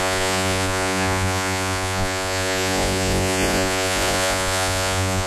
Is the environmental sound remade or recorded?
remade